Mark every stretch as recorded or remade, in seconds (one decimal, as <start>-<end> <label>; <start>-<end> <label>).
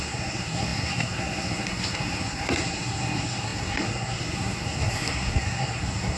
0.0-6.2 remade